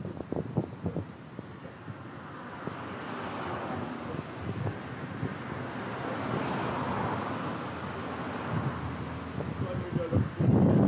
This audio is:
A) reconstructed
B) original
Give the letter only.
B